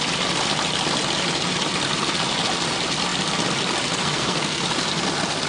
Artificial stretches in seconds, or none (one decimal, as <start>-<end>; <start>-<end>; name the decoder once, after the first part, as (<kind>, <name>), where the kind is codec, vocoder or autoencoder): 4.0-4.6 (codec, SNAC)